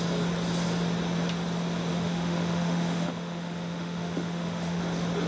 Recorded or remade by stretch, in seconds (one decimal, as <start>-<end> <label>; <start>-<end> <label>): 0.0-1.9 recorded; 1.9-4.8 remade; 4.8-5.3 recorded